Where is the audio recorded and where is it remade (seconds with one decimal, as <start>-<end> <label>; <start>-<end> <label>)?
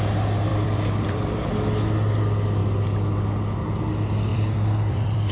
0.0-0.5 recorded; 0.5-1.5 remade; 1.5-4.3 recorded; 4.3-5.3 remade